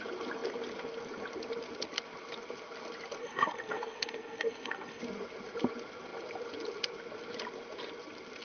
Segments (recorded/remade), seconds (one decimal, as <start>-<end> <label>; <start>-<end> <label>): 0.0-3.2 recorded; 3.2-5.0 remade; 5.0-8.4 recorded